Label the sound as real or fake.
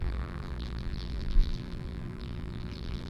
fake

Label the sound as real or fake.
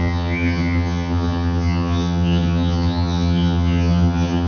fake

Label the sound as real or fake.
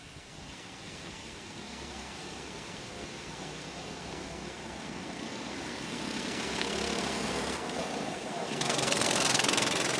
fake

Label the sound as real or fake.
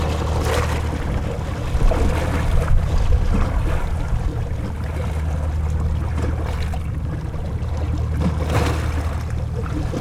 real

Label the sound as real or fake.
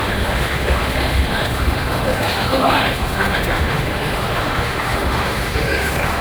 fake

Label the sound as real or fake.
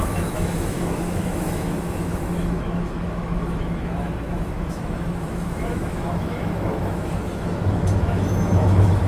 fake